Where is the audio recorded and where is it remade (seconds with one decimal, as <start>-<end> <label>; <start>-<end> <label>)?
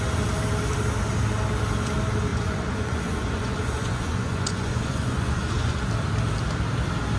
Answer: 0.0-2.3 recorded; 2.3-5.9 remade; 5.9-7.2 recorded